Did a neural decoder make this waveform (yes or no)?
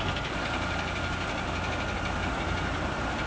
no